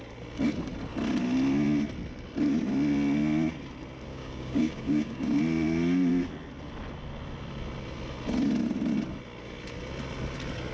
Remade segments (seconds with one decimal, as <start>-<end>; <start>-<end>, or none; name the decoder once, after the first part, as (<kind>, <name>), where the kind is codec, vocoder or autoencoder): 4.1-5.4 (codec, DAC)